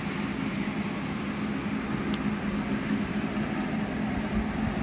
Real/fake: real